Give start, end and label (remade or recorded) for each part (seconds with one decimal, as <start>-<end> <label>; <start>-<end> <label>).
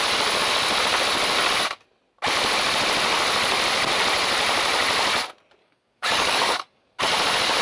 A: 0.0-5.6 recorded; 5.6-7.0 remade; 7.0-7.6 recorded